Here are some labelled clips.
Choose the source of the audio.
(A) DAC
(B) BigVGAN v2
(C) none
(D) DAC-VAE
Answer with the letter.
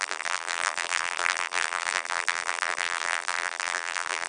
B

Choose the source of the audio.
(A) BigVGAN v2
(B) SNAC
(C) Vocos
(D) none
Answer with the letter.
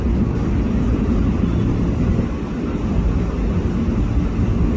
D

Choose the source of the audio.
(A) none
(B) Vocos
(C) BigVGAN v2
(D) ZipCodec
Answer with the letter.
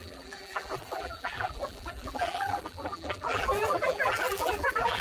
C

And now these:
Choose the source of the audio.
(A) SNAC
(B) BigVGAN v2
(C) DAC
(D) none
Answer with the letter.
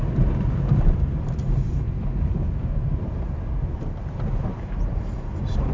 B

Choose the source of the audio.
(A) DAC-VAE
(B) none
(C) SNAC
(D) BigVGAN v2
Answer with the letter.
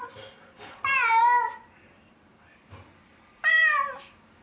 D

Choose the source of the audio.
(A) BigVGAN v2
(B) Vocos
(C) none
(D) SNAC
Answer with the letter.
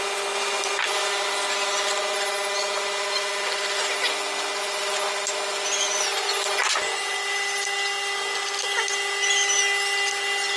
C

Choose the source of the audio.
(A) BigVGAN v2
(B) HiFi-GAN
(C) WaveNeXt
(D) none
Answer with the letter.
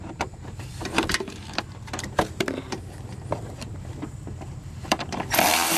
A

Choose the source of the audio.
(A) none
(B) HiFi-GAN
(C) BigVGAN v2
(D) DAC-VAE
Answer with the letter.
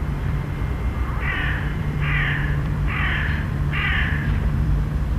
C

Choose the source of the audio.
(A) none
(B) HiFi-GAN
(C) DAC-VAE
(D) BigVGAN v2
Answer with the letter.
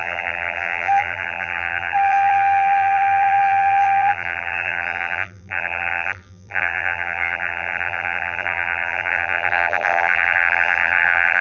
D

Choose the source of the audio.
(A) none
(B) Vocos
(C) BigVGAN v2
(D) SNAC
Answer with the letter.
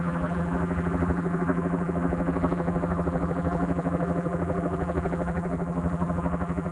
C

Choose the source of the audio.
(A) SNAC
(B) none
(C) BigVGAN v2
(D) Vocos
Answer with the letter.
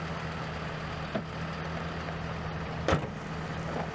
B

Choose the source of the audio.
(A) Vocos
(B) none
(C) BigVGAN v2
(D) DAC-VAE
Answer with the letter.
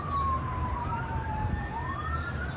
C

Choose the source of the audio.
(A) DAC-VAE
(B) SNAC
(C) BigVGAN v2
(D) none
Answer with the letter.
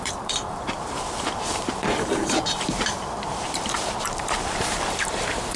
C